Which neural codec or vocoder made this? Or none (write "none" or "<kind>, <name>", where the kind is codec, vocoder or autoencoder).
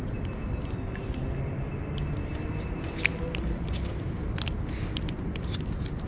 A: none